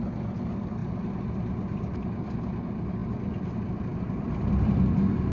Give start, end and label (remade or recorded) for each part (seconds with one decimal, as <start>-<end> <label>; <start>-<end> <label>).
0.0-5.3 recorded